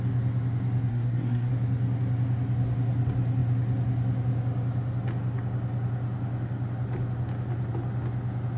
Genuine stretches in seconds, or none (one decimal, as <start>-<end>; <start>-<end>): 0.0-0.9; 1.5-8.6